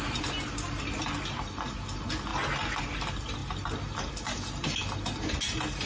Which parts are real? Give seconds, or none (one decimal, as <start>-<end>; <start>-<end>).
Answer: 0.0-5.9